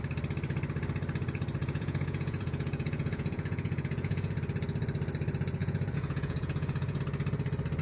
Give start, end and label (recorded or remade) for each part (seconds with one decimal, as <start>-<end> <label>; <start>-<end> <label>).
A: 0.0-1.6 recorded; 1.6-4.4 remade; 4.4-5.6 recorded; 5.6-7.0 remade; 7.0-7.8 recorded